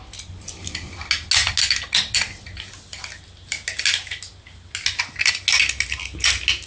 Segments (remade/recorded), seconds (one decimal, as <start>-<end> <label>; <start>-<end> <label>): 0.0-6.7 recorded